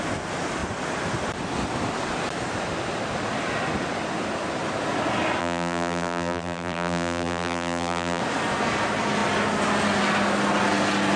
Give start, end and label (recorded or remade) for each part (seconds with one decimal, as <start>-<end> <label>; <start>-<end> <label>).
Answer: 0.0-5.4 recorded; 5.4-8.2 remade; 8.2-11.2 recorded